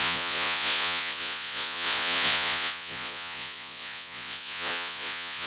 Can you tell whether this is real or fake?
fake